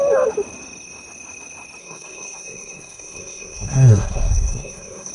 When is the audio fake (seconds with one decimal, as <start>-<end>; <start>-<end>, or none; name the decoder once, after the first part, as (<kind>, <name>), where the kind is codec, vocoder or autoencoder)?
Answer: 1.8-5.1 (codec, SNAC)